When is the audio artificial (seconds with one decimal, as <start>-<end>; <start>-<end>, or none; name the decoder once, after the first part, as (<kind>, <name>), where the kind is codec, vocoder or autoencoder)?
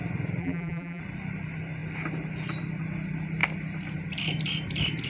0.4-1.0 (vocoder, BigVGAN v2)